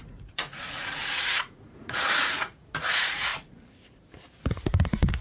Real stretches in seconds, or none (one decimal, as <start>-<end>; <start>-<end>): 3.3-4.4